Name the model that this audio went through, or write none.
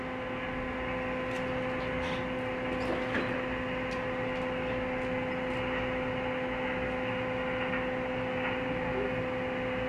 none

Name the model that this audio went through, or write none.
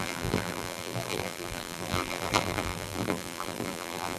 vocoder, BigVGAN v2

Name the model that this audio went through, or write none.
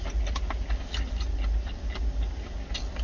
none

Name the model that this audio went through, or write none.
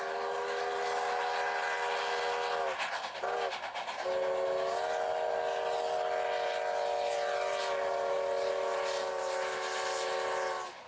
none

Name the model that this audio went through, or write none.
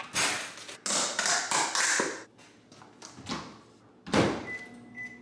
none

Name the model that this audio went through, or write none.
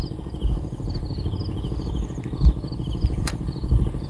none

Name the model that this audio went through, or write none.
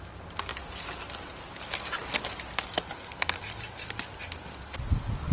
none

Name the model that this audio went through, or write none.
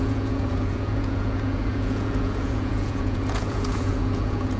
vocoder, Vocos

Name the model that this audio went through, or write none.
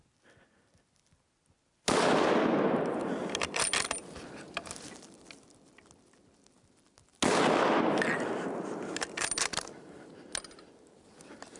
none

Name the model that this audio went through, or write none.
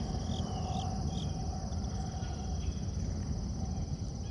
none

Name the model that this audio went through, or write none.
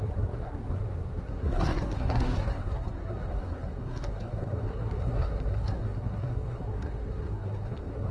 codec, SNAC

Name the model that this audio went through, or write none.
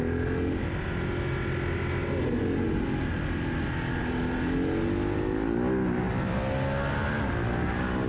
none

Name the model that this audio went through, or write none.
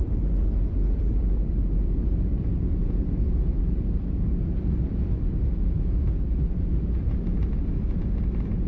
vocoder, BigVGAN v2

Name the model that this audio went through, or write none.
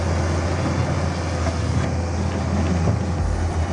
none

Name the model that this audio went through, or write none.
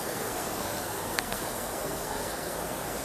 codec, SNAC